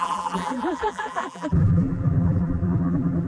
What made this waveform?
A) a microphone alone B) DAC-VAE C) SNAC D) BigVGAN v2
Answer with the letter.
D